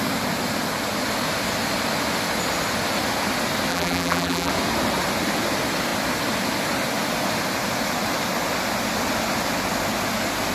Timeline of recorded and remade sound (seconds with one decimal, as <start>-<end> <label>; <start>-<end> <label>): 0.0-3.7 recorded; 3.7-4.5 remade; 4.5-10.5 recorded